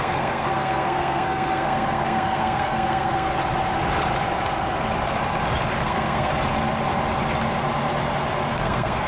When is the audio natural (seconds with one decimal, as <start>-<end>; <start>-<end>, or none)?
3.3-5.8; 6.3-8.5